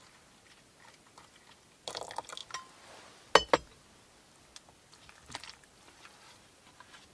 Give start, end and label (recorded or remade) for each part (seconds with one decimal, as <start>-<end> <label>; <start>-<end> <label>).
0.0-7.1 recorded